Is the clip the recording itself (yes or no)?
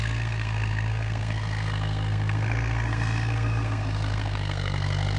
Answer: no